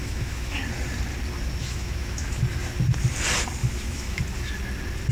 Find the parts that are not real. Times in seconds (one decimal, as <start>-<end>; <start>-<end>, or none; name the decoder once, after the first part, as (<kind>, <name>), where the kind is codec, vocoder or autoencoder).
0.0-0.6 (autoencoder, DAC-VAE); 1.6-2.4; 3.6-4.2